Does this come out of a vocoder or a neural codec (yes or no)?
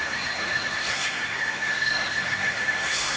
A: yes